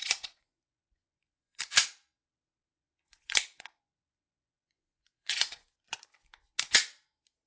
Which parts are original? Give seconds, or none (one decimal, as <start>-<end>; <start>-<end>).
1.6-2.7; 6.0-7.5